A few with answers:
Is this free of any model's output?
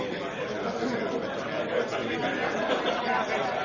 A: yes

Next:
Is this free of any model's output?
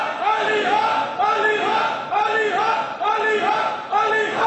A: yes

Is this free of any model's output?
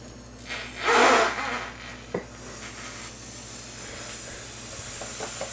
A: yes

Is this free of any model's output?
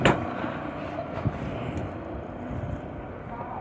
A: yes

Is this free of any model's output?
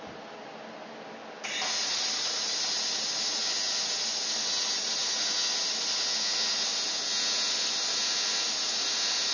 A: yes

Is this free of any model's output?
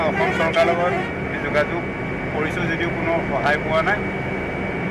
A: yes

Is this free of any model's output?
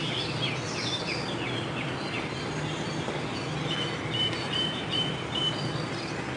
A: yes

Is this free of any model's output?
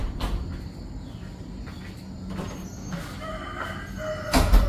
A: yes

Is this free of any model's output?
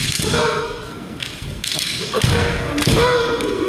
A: no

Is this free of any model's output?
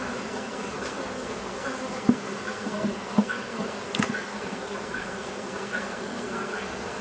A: no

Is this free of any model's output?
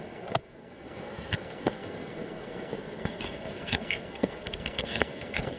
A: no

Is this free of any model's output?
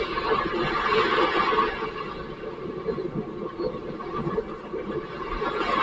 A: yes